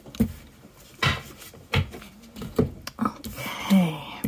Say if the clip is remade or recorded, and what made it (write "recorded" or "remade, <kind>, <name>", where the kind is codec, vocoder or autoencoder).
recorded